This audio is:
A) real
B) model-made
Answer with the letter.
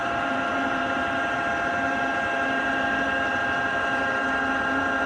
B